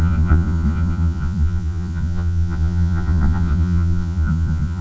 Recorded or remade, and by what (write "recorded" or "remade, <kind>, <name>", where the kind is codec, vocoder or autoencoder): remade, vocoder, Vocos